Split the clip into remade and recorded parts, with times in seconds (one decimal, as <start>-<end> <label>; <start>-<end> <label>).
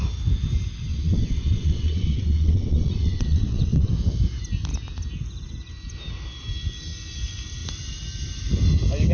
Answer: 0.0-0.9 recorded; 0.9-3.9 remade; 3.9-9.1 recorded